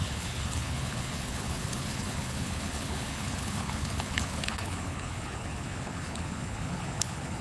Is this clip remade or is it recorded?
remade